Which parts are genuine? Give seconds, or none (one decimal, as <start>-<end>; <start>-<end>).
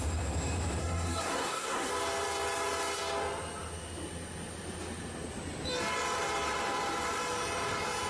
0.0-0.8; 1.9-8.1